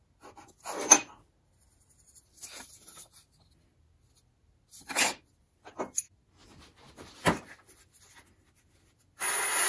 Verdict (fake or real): real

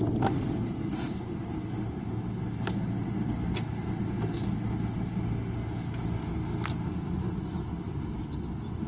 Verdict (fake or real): real